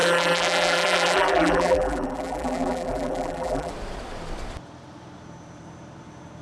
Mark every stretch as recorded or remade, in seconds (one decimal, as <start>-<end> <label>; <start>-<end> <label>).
0.0-3.7 remade; 3.7-6.4 recorded